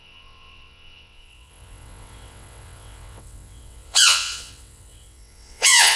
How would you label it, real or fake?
fake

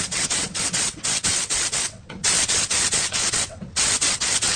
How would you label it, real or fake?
fake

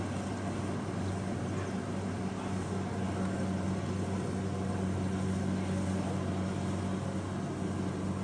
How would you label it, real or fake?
real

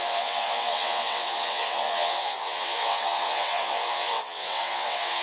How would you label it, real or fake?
fake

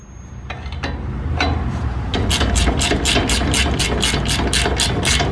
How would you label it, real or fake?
real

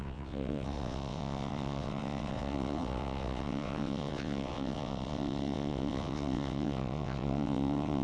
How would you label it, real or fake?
fake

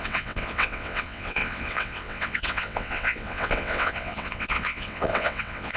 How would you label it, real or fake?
fake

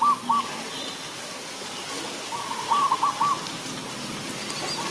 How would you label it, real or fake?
real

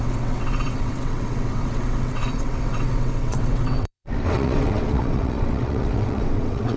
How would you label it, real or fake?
fake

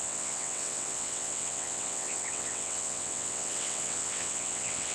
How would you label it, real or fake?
fake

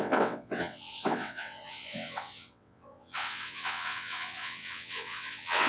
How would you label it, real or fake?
fake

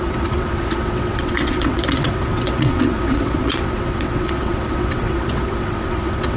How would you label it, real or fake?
fake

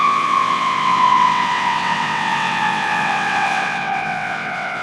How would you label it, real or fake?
fake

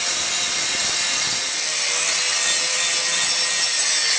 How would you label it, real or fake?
real